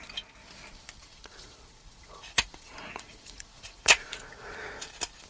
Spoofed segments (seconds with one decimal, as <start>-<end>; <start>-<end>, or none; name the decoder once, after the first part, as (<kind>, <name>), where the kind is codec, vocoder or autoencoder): 1.0-4.2 (vocoder, Vocos)